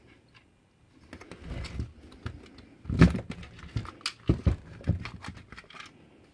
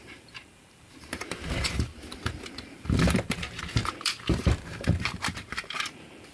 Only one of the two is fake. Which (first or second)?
second